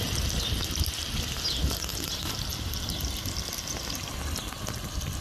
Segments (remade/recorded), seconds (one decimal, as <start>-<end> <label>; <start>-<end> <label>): 0.0-5.2 recorded